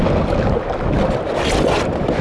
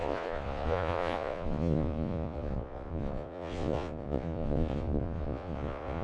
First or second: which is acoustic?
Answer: first